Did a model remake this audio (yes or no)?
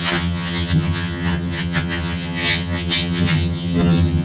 yes